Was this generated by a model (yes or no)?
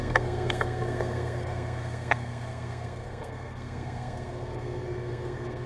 yes